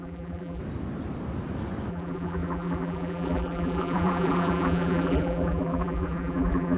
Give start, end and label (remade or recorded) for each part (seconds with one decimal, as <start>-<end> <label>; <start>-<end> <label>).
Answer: 0.0-0.6 remade; 0.6-1.9 recorded; 1.9-6.8 remade